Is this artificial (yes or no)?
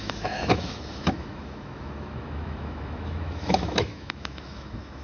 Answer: yes